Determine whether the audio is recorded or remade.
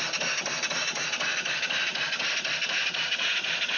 recorded